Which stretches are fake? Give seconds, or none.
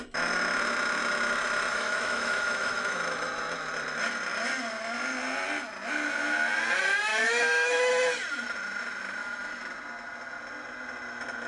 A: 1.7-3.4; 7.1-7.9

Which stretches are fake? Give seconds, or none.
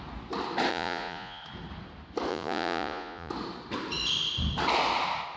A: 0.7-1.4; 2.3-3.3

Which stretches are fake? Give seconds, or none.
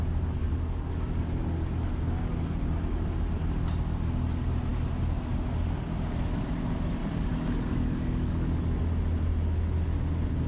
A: 0.4-0.9; 7.0-8.8